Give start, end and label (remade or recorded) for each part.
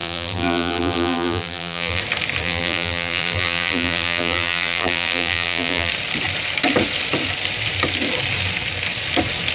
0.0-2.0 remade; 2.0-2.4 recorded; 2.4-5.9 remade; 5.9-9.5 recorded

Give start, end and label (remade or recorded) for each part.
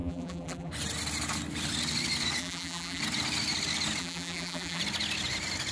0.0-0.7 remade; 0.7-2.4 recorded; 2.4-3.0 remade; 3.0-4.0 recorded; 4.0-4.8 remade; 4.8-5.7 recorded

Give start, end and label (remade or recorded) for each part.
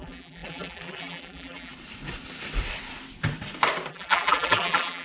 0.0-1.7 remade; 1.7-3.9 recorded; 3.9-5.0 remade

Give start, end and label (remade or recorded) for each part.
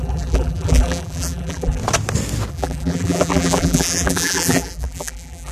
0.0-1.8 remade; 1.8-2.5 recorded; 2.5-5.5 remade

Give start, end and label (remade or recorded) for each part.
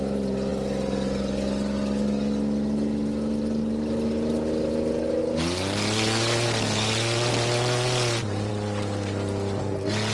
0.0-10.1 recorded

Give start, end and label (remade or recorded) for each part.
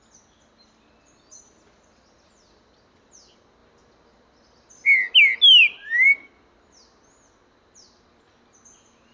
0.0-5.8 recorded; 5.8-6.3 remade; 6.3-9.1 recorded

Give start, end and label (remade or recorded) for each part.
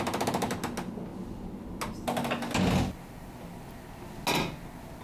0.0-5.0 recorded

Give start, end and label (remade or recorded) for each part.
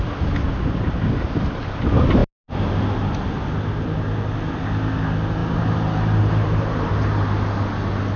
0.0-5.4 recorded; 5.4-6.9 remade; 6.9-8.2 recorded